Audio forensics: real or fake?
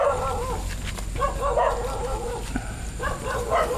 real